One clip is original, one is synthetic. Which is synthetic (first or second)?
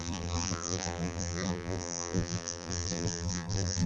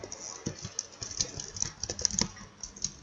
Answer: first